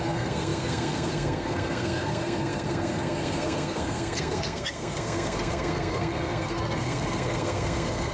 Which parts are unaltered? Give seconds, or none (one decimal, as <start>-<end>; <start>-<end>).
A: none